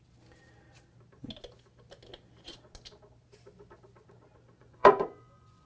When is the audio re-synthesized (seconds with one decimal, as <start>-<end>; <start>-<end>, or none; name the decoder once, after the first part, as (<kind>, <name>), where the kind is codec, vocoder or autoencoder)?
4.6-5.7 (vocoder, Vocos)